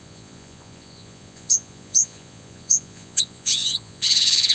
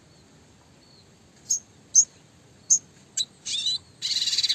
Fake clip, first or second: first